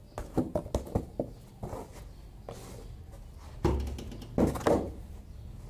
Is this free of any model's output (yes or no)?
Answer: yes